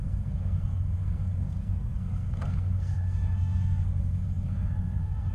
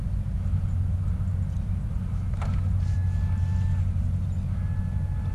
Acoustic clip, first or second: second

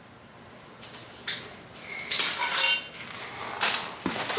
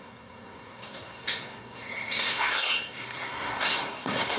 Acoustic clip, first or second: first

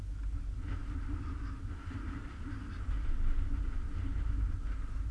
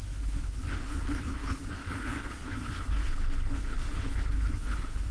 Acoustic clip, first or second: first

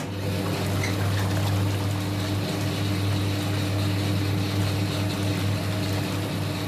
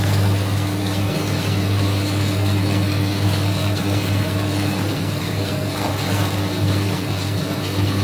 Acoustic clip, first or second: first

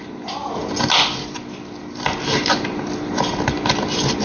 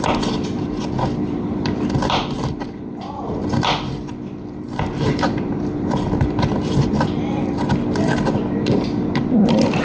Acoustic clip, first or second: first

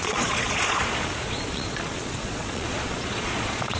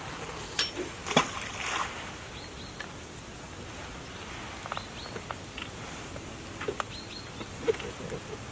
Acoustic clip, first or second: second